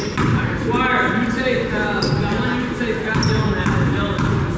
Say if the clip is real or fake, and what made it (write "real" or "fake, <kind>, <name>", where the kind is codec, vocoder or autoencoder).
real